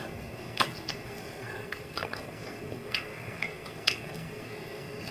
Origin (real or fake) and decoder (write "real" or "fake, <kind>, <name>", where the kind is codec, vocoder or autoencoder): fake, codec, SNAC